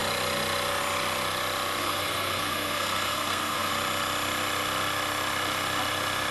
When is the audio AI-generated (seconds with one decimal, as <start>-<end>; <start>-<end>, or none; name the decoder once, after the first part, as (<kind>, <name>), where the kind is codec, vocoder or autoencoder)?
1.8-3.7 (codec, SNAC)